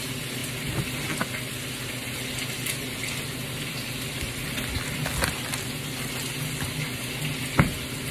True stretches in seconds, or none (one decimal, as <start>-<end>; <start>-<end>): 0.0-3.0; 4.4-8.1